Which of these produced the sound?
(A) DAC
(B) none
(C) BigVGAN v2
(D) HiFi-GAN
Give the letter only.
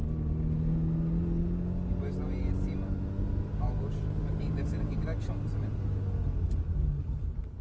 B